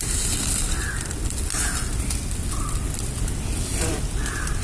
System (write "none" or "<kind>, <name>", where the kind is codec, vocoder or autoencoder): none